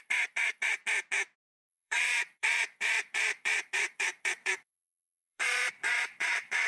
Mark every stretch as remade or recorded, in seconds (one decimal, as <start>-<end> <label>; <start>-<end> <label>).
0.0-0.8 remade; 0.8-1.7 recorded; 1.7-6.7 remade